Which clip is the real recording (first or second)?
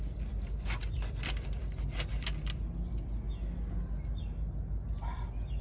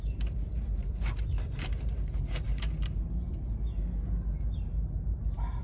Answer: first